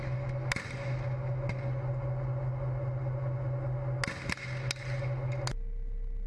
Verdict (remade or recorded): recorded